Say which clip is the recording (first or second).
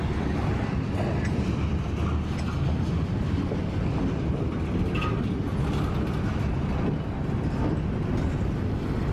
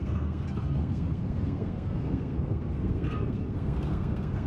first